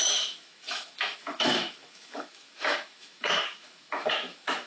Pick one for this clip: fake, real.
fake